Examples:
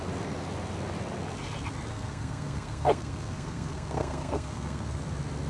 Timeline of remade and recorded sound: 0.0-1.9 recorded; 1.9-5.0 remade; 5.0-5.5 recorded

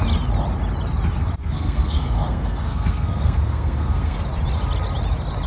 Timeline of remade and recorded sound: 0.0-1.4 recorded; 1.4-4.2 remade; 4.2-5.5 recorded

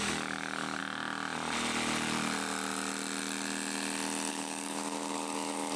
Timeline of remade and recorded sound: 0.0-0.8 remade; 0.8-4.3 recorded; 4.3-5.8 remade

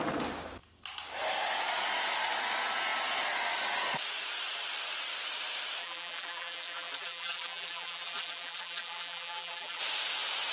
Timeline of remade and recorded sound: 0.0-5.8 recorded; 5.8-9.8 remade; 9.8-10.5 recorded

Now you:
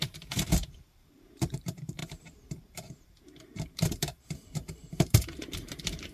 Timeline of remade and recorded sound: 0.0-6.1 remade

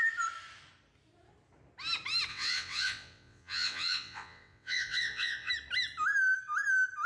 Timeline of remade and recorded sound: 0.0-2.3 recorded; 2.3-5.5 remade; 5.5-7.1 recorded

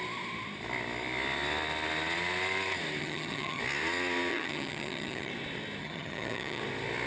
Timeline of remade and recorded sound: 0.0-3.0 recorded; 3.0-3.6 remade; 3.6-4.3 recorded; 4.3-5.3 remade; 5.3-5.8 recorded; 5.8-6.6 remade; 6.6-7.1 recorded

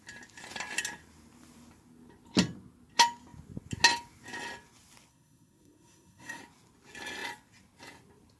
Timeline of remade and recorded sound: 0.0-5.1 recorded; 5.1-6.4 remade; 6.4-8.4 recorded